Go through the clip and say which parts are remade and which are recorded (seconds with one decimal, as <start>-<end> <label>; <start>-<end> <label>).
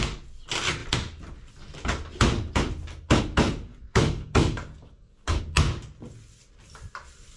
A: 0.0-3.7 recorded; 3.7-5.4 remade; 5.4-7.4 recorded